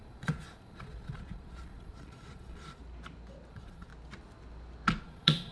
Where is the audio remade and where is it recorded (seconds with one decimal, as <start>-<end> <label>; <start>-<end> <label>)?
0.0-2.8 remade; 2.8-3.5 recorded; 3.5-3.9 remade; 3.9-5.0 recorded; 5.0-5.5 remade